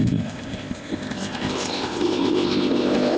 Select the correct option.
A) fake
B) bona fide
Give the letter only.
A